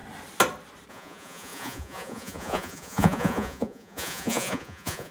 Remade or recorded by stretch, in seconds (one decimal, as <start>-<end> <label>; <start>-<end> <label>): 0.0-0.9 recorded; 0.9-5.1 remade